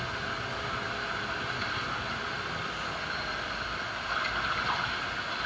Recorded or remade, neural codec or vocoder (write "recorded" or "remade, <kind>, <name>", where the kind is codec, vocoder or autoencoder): recorded